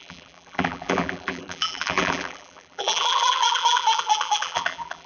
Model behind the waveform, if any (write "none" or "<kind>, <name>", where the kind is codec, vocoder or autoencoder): vocoder, BigVGAN v2